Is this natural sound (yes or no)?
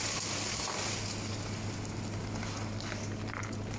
no